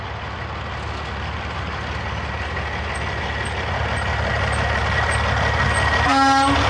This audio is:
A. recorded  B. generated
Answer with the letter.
A